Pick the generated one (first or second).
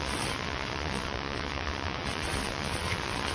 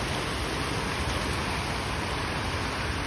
first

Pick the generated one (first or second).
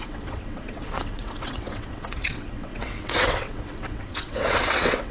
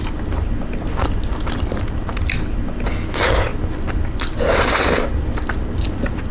first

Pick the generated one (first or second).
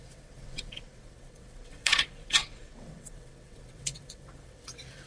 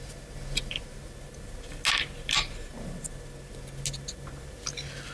first